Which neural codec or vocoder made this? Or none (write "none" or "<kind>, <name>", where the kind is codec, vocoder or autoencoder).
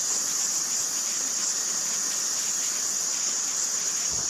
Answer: none